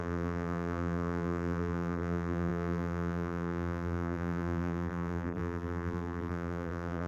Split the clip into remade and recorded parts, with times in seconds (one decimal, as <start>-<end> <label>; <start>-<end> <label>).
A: 0.0-7.1 remade